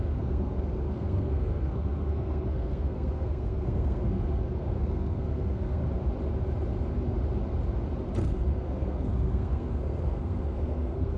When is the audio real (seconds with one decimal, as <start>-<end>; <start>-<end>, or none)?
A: 5.8-8.2